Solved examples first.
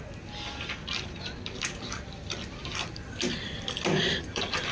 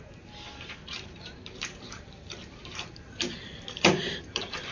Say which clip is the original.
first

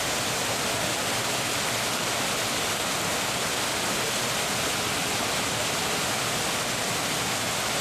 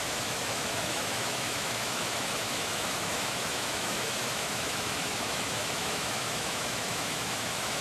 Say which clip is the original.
first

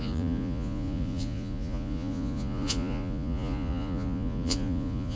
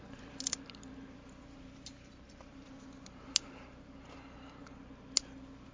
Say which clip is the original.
second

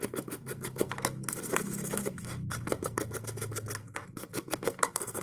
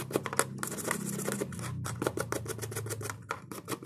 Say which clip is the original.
second